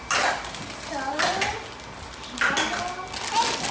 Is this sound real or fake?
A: real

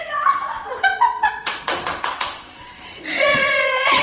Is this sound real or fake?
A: fake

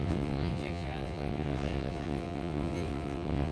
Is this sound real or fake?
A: fake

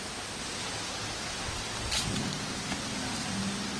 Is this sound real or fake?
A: real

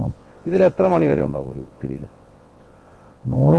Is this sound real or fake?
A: fake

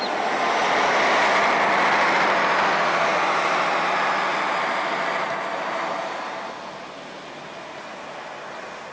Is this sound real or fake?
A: real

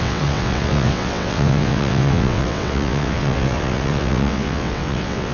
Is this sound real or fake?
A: fake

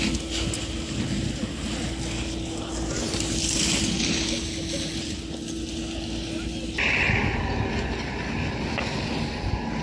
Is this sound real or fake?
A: real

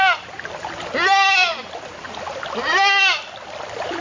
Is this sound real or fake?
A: real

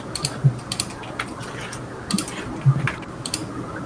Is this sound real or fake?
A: real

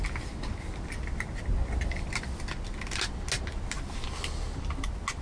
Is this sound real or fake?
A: real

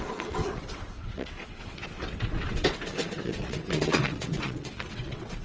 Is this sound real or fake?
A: fake